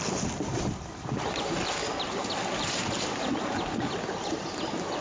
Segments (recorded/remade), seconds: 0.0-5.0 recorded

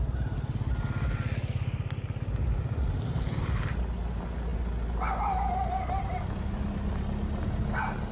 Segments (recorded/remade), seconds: 0.0-8.1 recorded

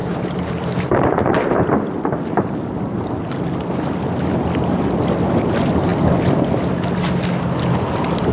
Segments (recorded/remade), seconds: 0.0-3.2 remade; 3.2-8.3 recorded